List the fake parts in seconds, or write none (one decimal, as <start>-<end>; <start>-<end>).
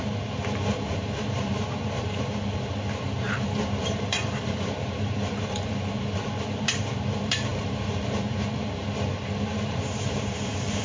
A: 0.0-10.8